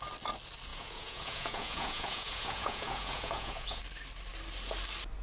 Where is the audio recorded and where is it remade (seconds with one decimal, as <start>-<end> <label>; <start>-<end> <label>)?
0.0-0.7 recorded; 0.7-3.8 remade; 3.8-5.2 recorded